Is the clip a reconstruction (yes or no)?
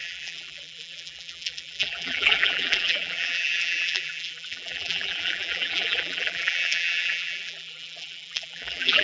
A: yes